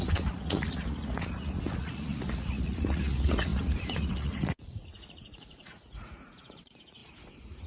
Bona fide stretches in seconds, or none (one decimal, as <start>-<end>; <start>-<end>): none